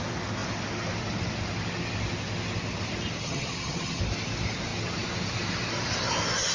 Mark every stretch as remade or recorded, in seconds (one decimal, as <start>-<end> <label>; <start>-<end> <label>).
0.0-3.2 recorded; 3.2-4.0 remade; 4.0-6.5 recorded